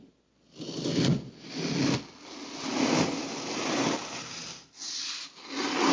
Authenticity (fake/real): real